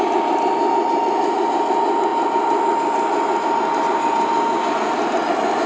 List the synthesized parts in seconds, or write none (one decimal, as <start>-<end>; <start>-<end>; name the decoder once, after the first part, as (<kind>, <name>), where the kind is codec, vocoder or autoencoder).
none